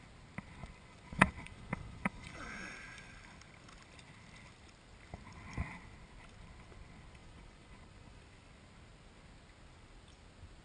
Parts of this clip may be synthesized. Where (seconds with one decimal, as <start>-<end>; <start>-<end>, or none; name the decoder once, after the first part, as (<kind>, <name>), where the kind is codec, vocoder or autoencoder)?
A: 0.6-2.7 (vocoder, Vocos); 7.2-8.2